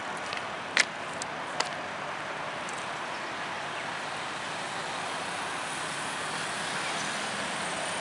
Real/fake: real